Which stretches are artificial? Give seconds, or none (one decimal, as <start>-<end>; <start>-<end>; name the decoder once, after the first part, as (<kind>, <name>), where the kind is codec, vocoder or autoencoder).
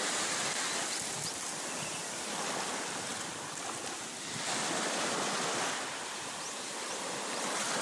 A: none